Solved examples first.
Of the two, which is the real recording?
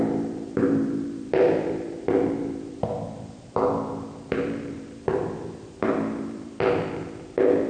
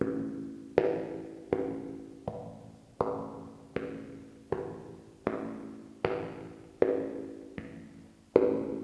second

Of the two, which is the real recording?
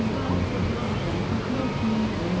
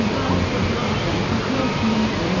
first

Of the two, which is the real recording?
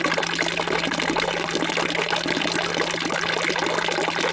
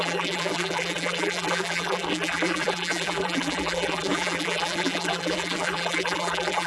first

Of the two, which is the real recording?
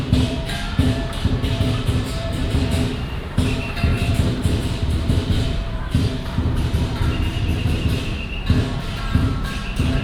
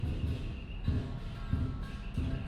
second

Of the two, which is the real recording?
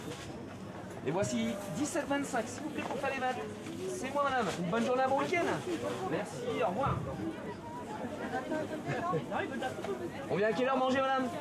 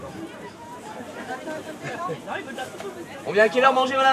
first